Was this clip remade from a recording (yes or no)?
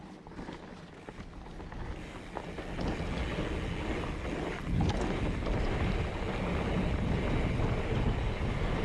no